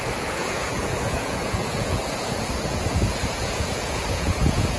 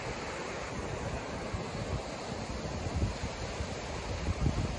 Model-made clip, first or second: first